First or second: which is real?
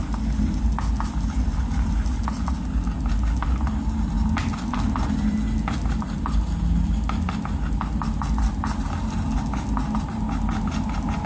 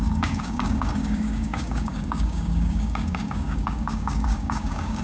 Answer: first